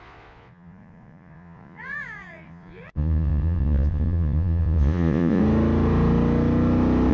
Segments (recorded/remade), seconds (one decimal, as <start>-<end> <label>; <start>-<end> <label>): 0.0-5.4 remade; 5.4-7.1 recorded